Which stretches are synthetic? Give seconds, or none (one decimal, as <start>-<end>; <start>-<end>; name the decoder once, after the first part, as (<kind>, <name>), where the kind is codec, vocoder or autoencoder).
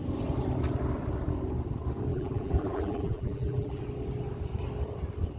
2.1-3.8 (vocoder, BigVGAN v2)